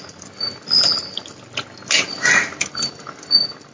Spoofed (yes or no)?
no